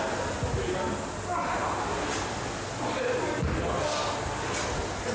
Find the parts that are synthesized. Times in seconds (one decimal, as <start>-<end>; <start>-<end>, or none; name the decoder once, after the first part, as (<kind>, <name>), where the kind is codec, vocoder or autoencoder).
none